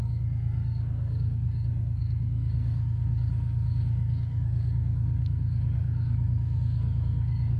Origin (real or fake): fake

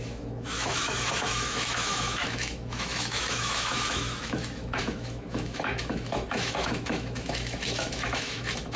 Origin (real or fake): fake